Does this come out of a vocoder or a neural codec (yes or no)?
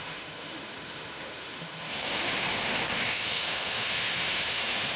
yes